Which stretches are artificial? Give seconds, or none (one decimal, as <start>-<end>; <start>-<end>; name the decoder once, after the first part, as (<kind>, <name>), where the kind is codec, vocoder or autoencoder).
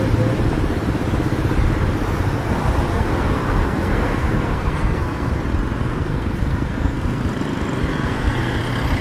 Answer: 2.9-5.3 (codec, SNAC); 5.8-7.2; 7.9-8.6